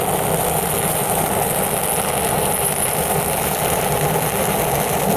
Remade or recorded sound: recorded